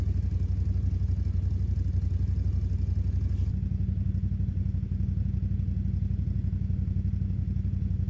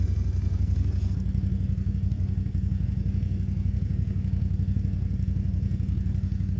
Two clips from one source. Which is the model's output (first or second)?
second